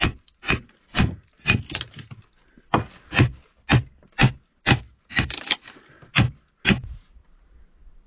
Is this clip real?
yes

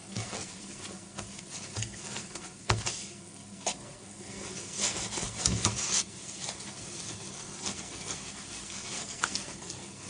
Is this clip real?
no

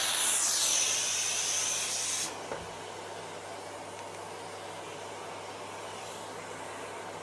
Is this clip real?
yes